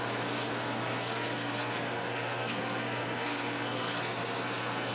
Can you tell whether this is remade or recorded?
remade